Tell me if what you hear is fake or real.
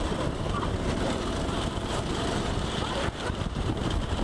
fake